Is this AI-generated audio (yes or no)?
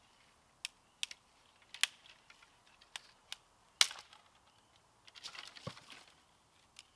no